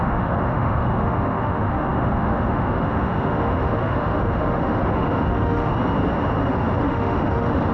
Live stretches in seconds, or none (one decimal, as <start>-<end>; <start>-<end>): 5.7-6.8